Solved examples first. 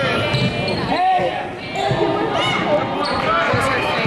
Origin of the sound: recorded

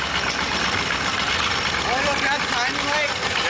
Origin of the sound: recorded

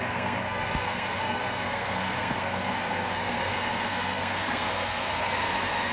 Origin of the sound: remade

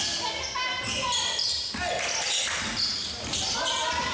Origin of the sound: recorded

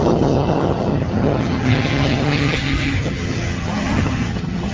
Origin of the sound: remade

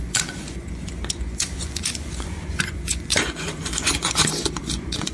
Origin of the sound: remade